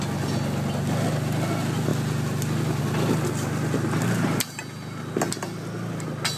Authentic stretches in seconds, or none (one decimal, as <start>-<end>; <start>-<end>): 0.0-6.4

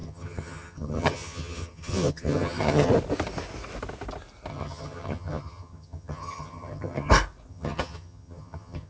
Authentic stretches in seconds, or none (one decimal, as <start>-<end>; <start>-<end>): 2.9-4.5; 7.1-7.5

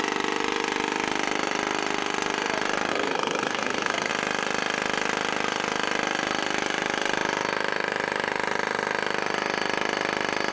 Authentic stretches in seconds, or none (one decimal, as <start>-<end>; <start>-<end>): 0.0-2.9; 4.1-10.5

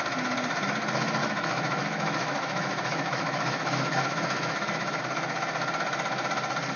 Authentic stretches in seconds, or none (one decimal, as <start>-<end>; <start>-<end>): 0.0-1.2; 5.0-6.8

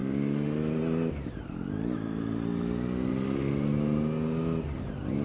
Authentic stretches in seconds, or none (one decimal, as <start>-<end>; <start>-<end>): 0.0-5.2

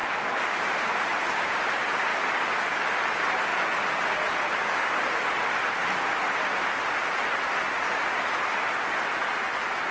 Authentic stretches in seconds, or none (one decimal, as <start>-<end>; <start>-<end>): 1.6-9.9

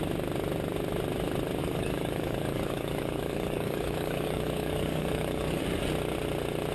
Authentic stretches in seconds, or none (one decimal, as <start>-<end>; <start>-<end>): 0.0-1.6; 5.6-6.7